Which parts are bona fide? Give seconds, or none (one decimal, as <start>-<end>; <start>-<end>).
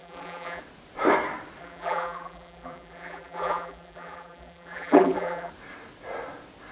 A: 0.6-1.6; 5.5-6.7